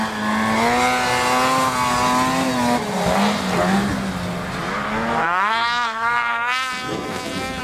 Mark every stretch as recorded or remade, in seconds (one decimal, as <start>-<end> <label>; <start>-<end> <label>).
0.0-5.2 recorded; 5.2-7.6 remade

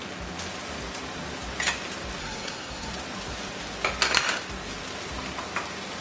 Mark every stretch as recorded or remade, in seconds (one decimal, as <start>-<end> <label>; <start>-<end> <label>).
0.0-2.2 recorded; 2.2-2.9 remade; 2.9-6.0 recorded

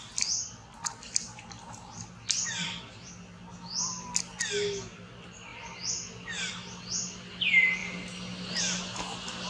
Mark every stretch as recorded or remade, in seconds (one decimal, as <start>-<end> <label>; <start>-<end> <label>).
0.0-9.5 recorded

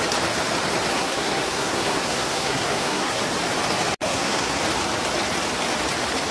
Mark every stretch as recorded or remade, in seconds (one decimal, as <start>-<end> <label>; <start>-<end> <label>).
0.0-0.9 recorded; 0.9-3.2 remade; 3.2-4.0 recorded; 4.0-4.6 remade; 4.6-6.3 recorded

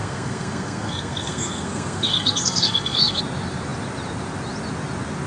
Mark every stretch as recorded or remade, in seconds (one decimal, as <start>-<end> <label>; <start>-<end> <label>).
0.0-3.2 remade; 3.2-5.3 recorded

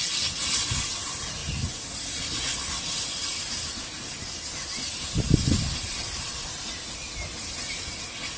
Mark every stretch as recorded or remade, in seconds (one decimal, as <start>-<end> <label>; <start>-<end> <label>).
0.0-8.4 recorded